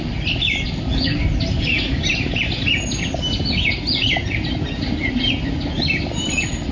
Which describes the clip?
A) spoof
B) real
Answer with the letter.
B